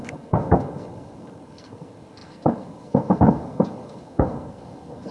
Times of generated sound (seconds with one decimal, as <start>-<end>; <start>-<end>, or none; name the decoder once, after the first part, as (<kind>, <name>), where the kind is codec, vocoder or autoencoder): 0.0-5.1 (codec, SNAC)